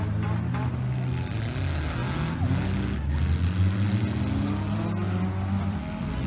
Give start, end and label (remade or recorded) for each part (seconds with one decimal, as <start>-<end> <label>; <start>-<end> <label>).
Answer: 0.0-6.3 recorded